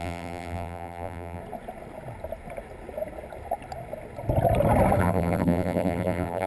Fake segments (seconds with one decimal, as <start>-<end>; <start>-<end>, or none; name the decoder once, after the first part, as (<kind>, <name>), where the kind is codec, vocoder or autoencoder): 0.0-1.4 (vocoder, BigVGAN v2); 5.0-6.5